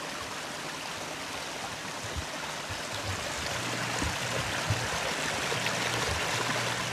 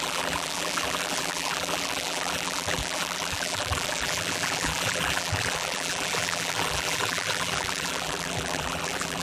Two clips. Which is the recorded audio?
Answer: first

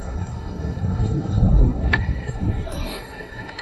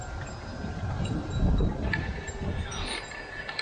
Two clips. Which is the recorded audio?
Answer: second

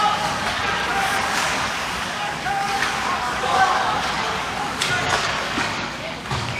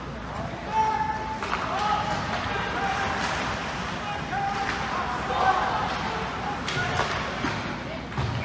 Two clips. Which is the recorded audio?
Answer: second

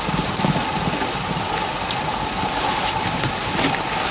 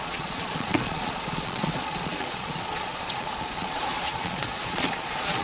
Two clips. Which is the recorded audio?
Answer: first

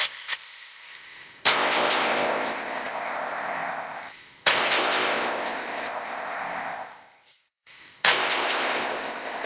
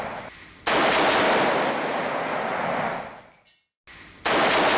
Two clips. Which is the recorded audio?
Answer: second